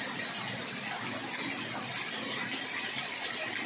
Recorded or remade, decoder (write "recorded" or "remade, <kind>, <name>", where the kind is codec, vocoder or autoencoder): recorded